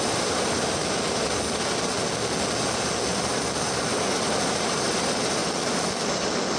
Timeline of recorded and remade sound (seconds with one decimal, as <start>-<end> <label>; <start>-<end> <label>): 0.0-0.8 remade; 0.8-3.9 recorded; 3.9-5.4 remade; 5.4-6.6 recorded